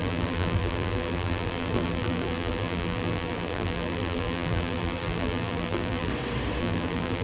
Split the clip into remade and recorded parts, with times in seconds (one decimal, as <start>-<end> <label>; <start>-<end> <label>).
0.0-6.1 remade; 6.1-6.6 recorded; 6.6-7.2 remade